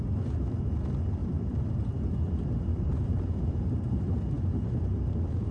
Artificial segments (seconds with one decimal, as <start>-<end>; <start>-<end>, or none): 1.2-1.8; 2.7-5.5